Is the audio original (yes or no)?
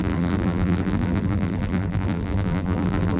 no